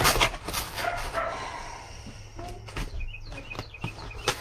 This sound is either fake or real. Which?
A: real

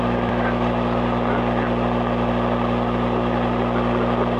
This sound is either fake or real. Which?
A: real